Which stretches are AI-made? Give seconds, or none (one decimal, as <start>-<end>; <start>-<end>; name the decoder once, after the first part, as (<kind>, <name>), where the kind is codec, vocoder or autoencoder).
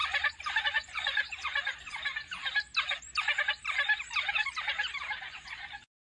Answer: 0.6-1.5 (vocoder, Vocos); 5.2-6.1